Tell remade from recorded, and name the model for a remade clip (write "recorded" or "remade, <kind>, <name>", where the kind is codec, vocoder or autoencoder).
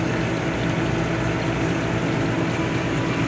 recorded